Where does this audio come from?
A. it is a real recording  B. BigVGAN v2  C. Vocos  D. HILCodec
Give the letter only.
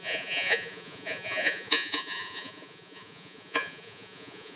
C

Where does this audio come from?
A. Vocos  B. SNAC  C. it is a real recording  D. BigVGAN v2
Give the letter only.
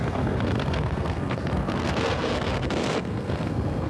B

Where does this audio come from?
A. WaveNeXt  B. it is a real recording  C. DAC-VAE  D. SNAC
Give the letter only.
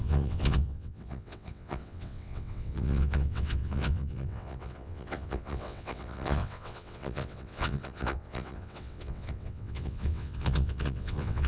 A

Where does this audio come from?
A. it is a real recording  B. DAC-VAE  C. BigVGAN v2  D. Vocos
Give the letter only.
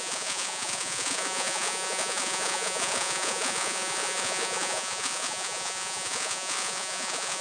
D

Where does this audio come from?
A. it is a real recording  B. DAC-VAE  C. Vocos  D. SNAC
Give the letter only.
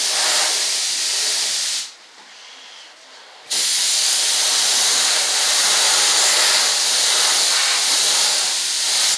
A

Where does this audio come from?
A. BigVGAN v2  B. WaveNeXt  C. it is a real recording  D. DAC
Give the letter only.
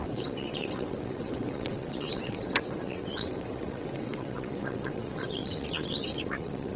B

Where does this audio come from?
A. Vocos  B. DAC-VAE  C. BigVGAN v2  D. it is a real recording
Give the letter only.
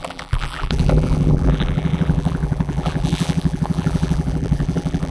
C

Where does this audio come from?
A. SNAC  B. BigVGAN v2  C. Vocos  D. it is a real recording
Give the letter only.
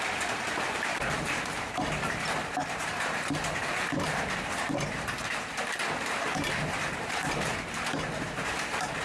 B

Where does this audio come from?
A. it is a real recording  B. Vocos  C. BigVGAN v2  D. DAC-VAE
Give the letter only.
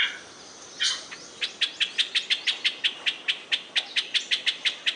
A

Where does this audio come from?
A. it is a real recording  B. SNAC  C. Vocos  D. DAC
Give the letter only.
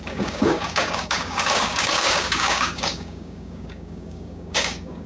D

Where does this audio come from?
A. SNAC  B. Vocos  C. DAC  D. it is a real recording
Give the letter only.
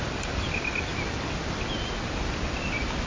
D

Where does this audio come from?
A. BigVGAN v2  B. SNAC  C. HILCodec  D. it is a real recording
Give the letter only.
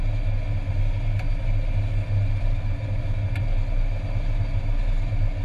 D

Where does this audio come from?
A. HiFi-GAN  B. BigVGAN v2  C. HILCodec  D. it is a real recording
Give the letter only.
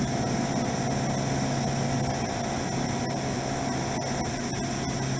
D